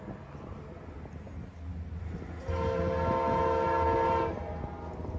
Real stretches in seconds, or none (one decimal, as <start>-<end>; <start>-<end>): 0.0-5.2